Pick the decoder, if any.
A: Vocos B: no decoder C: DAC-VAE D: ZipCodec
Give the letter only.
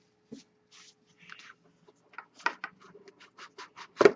B